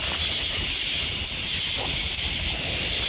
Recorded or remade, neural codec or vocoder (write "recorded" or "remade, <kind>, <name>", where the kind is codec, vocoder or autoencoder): remade, vocoder, BigVGAN v2